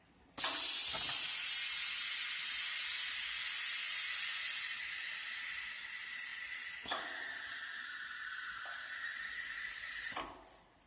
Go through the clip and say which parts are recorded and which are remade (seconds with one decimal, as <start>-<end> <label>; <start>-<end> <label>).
0.0-10.9 recorded